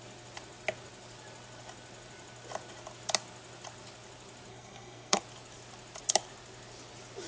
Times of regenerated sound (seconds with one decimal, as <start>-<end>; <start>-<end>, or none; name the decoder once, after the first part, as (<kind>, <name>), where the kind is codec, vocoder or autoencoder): 4.5-5.2 (codec, SNAC)